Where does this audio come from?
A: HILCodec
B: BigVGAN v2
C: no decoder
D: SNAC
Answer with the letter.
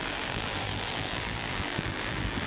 B